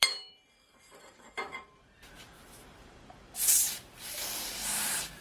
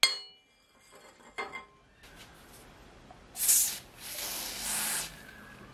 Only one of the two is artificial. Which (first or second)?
first